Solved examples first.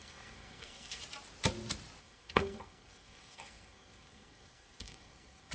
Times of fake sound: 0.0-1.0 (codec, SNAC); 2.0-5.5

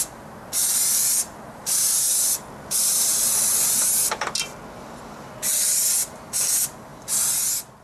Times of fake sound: none